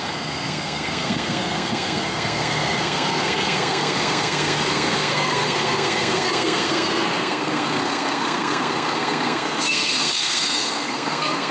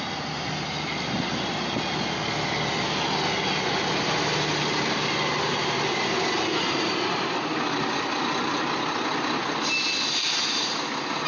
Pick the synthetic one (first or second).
first